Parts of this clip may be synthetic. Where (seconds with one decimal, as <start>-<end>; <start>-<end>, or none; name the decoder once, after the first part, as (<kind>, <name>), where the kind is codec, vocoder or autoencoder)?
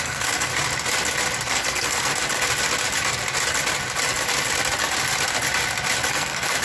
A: 0.0-0.5 (codec, SNAC); 1.5-2.1; 6.1-6.6